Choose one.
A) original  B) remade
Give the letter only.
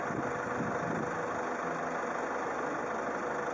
A